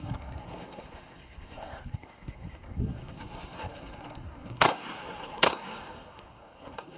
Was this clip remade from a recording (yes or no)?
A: yes